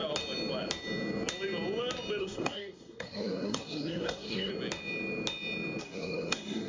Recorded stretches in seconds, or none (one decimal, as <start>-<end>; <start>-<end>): 0.0-2.2; 4.5-5.8